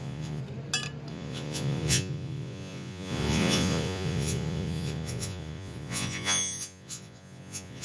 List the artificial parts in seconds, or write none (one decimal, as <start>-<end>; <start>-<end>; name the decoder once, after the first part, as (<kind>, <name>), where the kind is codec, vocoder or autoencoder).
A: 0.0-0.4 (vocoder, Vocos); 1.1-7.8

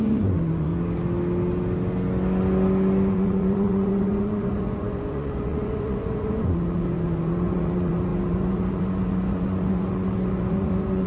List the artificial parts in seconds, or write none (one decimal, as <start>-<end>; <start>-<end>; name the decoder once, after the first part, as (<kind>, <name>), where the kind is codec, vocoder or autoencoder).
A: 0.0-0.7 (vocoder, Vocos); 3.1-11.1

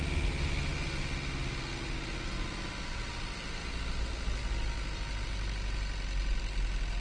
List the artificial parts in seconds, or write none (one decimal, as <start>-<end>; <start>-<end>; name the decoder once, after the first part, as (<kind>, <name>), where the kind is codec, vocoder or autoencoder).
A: none

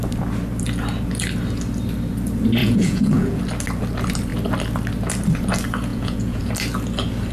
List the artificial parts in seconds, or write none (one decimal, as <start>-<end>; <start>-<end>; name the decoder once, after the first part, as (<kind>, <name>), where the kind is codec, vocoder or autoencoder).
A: 2.6-3.4 (vocoder, Vocos); 5.9-6.5